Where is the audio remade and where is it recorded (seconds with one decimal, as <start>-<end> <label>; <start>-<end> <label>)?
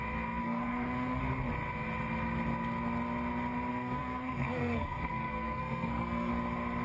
0.0-0.4 recorded; 0.4-1.2 remade; 1.2-3.7 recorded; 3.7-6.3 remade; 6.3-6.8 recorded